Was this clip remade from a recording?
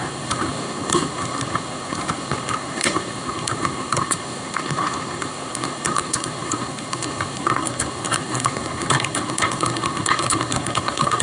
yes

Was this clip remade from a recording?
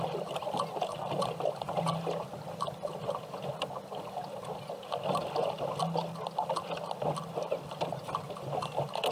no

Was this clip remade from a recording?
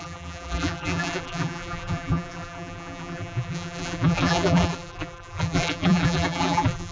yes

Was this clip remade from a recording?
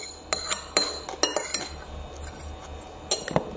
no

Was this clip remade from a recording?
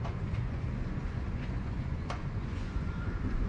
yes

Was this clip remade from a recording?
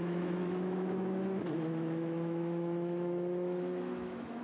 yes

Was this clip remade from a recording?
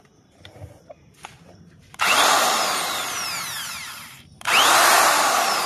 yes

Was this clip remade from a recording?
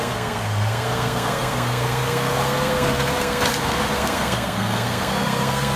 yes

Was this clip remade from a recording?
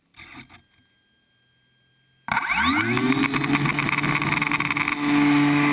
no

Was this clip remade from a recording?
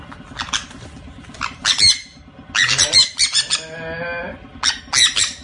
no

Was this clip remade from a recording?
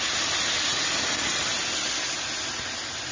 no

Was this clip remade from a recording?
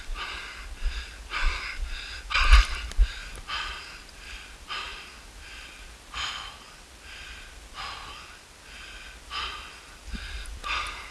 no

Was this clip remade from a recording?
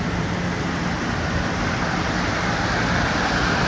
no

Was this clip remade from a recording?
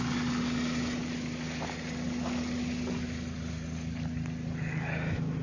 no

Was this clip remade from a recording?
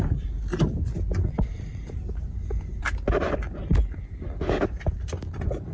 no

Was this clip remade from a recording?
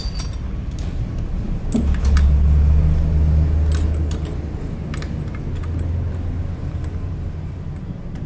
no